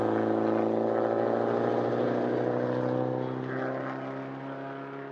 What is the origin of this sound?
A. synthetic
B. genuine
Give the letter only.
B